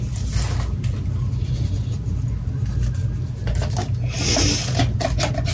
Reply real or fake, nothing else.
real